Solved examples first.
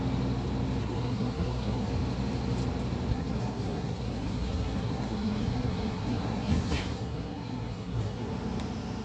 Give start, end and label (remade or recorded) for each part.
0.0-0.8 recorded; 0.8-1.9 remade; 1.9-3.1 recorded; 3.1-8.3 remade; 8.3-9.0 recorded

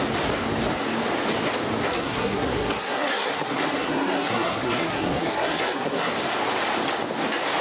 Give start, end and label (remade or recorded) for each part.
0.0-1.9 recorded; 1.9-6.1 remade; 6.1-7.6 recorded